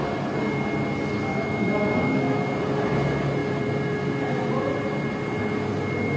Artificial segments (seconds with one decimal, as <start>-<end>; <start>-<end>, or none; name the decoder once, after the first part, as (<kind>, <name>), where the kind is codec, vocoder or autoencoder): 1.3-2.5 (autoencoder, DAC-VAE)